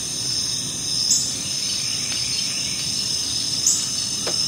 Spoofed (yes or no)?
no